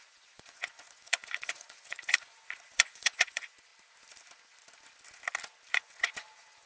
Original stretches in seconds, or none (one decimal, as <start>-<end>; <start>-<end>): 3.7-5.7